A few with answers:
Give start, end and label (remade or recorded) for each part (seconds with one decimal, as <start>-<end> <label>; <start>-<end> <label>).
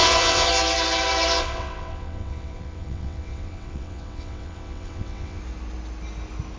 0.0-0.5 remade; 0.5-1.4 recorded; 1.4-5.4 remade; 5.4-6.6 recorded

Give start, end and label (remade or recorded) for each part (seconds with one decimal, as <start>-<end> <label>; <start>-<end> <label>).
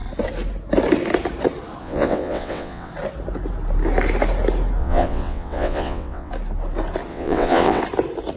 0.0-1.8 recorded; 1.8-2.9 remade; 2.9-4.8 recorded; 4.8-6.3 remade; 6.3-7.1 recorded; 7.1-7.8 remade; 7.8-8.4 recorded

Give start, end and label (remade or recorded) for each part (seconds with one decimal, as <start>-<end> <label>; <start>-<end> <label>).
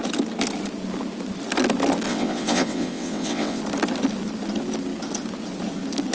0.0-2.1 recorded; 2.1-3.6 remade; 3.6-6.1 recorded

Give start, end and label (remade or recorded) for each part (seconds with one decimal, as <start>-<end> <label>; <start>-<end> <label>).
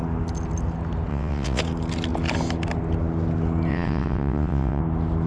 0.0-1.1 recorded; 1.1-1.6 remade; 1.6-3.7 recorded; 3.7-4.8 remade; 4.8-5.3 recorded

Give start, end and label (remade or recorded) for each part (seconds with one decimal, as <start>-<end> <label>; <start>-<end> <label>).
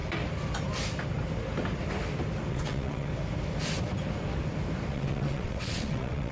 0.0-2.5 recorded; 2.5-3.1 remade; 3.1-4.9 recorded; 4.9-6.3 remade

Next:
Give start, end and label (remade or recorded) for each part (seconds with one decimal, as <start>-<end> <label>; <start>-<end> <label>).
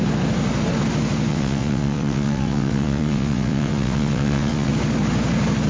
0.0-1.3 recorded; 1.3-4.7 remade; 4.7-5.7 recorded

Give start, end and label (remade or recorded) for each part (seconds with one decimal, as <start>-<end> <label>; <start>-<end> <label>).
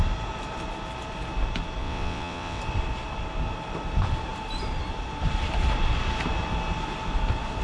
0.0-1.8 recorded; 1.8-2.6 remade; 2.6-7.6 recorded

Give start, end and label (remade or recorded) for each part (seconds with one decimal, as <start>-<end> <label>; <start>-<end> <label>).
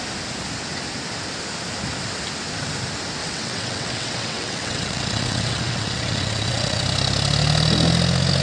0.0-3.2 recorded; 3.2-6.8 remade; 6.8-8.4 recorded